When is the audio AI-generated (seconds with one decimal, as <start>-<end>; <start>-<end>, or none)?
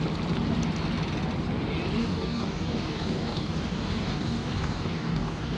2.0-5.6